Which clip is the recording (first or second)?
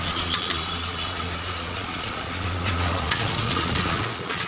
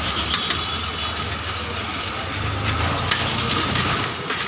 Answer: second